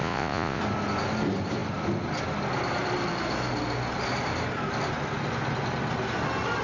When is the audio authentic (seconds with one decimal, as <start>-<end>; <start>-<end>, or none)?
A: 0.6-6.6